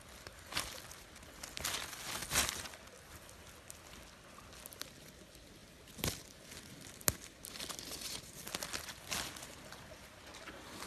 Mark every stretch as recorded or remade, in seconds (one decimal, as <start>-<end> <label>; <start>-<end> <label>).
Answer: 0.0-10.3 recorded; 10.3-10.9 remade